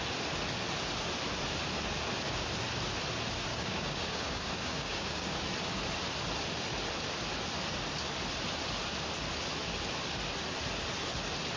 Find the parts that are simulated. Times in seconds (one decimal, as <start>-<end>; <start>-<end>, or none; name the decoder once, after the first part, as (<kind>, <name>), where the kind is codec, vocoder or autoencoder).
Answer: 3.5-5.4 (codec, DAC)